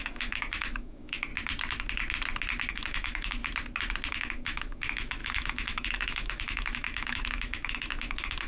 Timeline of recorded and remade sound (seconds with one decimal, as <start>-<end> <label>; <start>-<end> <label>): 0.0-1.3 remade; 1.3-2.7 recorded; 2.7-3.4 remade; 3.4-4.1 recorded; 4.1-8.5 remade